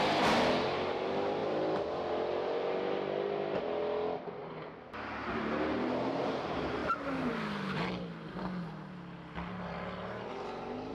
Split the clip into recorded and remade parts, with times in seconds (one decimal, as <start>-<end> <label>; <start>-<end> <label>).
0.0-10.9 recorded